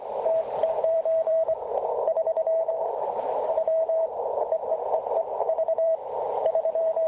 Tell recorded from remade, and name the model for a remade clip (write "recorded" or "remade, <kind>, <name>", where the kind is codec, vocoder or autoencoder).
remade, vocoder, BigVGAN v2